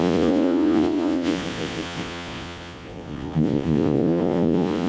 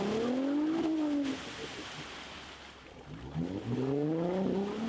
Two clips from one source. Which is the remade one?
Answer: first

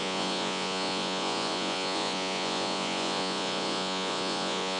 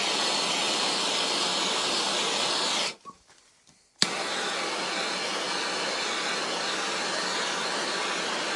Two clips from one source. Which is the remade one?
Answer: first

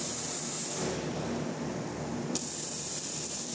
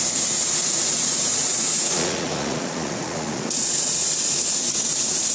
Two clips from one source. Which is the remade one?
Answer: second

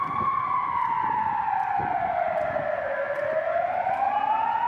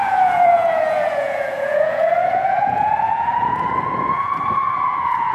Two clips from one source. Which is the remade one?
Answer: second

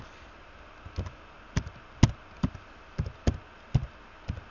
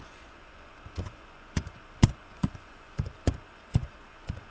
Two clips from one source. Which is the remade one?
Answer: second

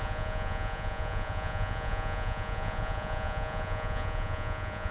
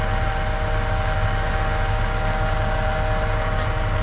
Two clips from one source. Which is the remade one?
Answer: first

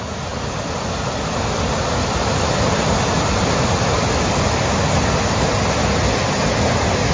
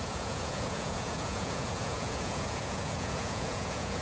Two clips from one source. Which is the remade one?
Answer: second